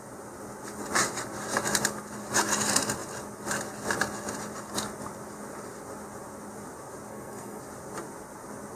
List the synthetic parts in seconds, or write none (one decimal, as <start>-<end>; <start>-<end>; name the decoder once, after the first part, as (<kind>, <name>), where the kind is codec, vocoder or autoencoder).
7.1-7.6 (codec, SNAC)